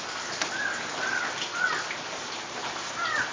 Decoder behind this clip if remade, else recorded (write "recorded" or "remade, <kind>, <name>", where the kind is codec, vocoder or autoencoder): recorded